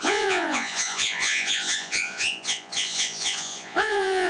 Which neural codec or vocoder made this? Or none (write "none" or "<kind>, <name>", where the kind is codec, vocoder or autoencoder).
vocoder, Vocos